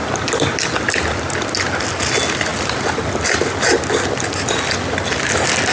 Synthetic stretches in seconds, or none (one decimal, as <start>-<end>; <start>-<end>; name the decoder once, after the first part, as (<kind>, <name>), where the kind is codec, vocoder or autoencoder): none